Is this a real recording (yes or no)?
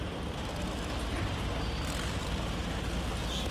no